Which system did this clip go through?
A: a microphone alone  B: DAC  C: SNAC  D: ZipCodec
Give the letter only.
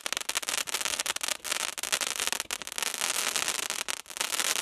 A